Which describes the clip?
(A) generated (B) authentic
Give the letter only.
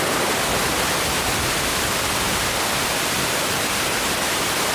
B